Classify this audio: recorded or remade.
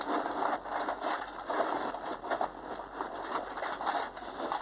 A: recorded